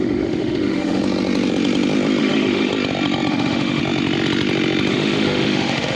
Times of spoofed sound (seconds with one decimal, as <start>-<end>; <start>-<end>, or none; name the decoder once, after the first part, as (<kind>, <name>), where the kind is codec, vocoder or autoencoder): 0.0-1.0 (autoencoder, DAC-VAE); 2.2-2.7; 3.3-3.8; 4.9-6.0